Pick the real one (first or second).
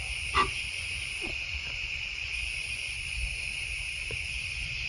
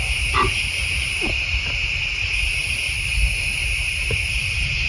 second